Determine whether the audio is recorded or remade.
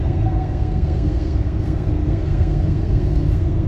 remade